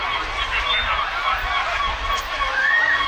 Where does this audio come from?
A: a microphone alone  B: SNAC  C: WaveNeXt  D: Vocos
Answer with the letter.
A